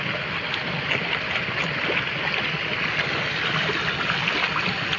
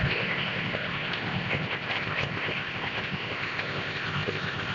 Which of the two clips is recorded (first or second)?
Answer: first